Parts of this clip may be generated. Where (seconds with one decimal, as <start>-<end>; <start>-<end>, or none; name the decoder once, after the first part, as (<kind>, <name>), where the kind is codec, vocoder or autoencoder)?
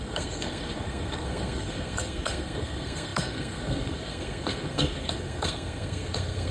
0.0-6.5 (codec, SNAC)